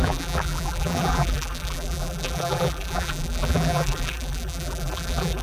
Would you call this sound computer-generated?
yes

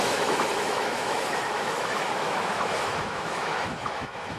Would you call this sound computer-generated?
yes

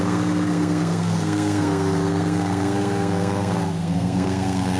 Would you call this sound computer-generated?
yes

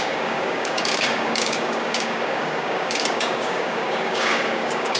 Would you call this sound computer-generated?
yes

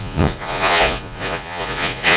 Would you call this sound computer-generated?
yes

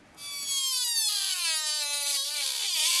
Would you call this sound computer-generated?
no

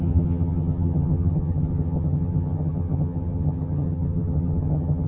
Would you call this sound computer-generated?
yes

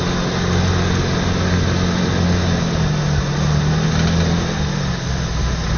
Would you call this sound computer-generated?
no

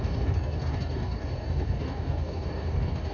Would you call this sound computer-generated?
yes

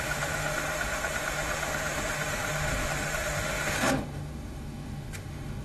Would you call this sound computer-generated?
yes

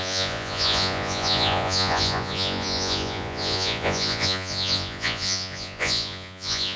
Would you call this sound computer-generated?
yes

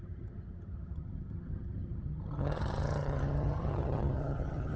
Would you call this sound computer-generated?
yes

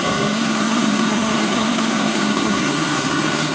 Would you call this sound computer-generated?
yes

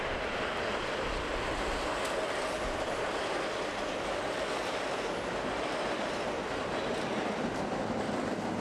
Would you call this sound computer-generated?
no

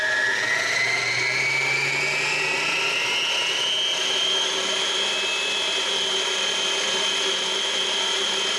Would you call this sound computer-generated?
no